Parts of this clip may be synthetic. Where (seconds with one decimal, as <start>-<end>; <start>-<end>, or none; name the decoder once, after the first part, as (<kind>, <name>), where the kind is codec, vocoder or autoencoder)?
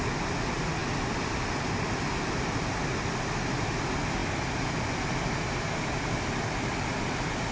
none